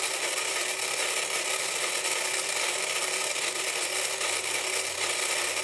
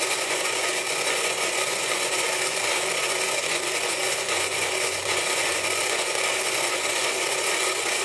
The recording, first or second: first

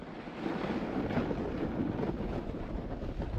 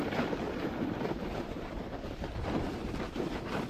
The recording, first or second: first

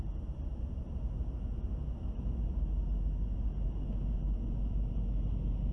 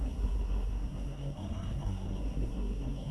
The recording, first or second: first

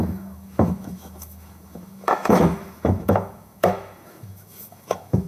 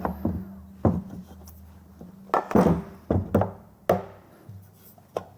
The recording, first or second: second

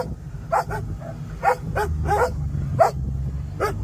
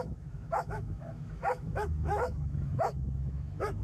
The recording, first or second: first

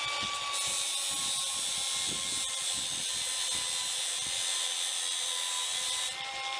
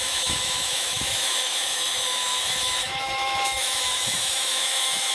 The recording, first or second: first